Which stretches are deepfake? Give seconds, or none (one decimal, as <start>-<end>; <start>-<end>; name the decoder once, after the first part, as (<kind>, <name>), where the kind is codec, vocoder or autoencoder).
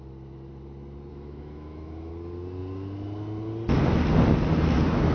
1.1-2.1 (autoencoder, DAC-VAE)